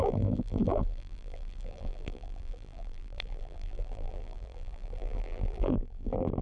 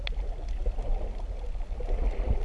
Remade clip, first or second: first